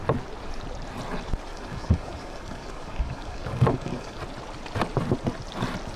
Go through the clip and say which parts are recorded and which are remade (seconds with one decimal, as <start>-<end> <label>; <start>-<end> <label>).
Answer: 0.0-1.5 recorded; 1.5-4.2 remade; 4.2-6.0 recorded